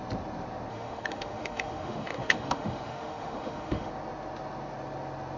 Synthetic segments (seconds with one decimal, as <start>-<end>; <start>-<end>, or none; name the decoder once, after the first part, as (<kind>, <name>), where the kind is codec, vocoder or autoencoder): 0.7-3.9 (autoencoder, DAC-VAE)